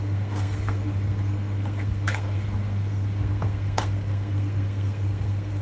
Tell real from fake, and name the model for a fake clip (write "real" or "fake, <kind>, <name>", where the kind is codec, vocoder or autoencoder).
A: fake, codec, SNAC